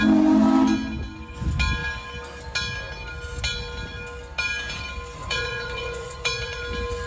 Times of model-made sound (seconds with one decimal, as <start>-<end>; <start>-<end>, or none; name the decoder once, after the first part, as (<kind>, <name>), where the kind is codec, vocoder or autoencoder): 5.2-6.6 (vocoder, Vocos)